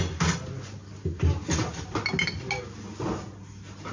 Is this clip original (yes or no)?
yes